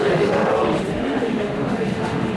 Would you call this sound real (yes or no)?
no